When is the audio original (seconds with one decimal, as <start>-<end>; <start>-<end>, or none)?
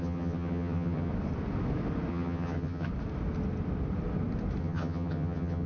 1.1-2.1; 2.9-4.6